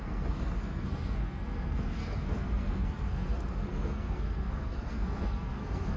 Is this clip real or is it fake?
fake